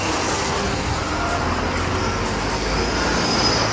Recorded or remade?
recorded